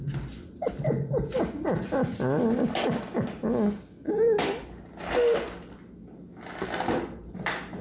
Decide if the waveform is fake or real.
real